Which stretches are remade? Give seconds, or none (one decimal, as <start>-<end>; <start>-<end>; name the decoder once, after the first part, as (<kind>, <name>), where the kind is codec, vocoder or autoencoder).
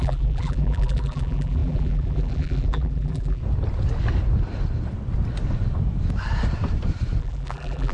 0.0-3.4 (vocoder, BigVGAN v2); 7.2-7.9